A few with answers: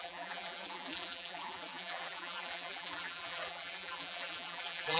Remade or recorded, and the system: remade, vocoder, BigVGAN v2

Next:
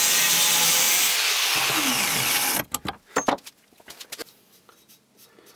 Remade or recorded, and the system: recorded